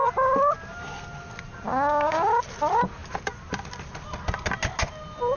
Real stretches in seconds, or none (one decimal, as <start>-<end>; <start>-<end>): 0.0-1.7; 2.3-5.4

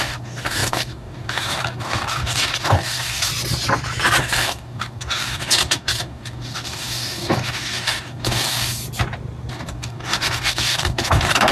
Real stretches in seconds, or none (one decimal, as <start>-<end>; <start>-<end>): 3.3-4.2; 8.8-9.5

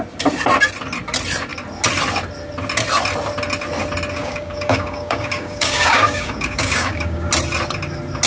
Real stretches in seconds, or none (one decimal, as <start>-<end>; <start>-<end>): 0.0-4.2; 7.3-8.3

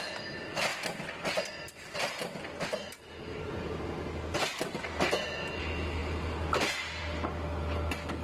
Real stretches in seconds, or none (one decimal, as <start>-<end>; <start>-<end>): 0.0-8.2

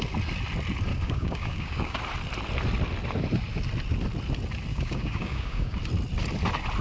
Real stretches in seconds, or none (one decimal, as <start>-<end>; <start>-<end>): 0.0-0.9; 2.0-4.7; 5.8-6.8